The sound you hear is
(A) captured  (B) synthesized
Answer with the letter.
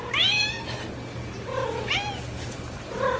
A